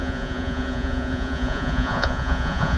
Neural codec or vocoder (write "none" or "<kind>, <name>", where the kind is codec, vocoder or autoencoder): vocoder, Vocos